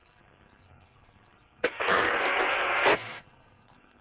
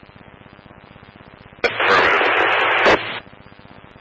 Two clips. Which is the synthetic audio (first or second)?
first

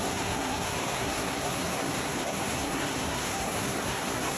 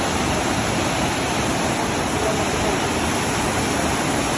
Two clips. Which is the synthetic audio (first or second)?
first